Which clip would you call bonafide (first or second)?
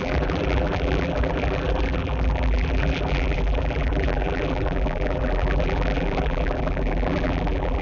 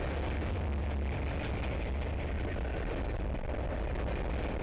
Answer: second